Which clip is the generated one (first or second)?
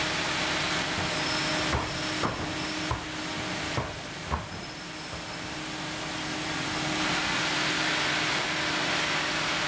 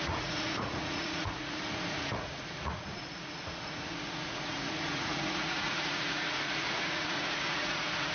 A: second